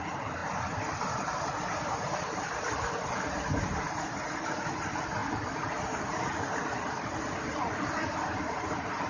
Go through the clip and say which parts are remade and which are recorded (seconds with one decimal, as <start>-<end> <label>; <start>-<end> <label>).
0.0-9.1 recorded